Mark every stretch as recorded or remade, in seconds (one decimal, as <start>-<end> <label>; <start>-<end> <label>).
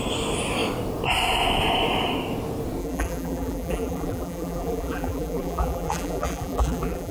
0.0-2.8 recorded; 2.8-7.1 remade